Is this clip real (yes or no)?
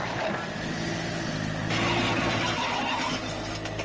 yes